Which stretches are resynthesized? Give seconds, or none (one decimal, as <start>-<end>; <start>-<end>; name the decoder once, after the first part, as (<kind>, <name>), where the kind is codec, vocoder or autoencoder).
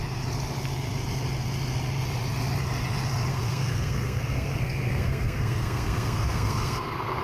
3.3-7.2 (codec, SNAC)